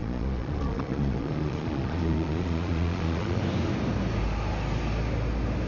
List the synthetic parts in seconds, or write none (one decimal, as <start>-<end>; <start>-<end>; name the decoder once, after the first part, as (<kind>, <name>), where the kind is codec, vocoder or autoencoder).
0.0-3.4 (vocoder, Vocos)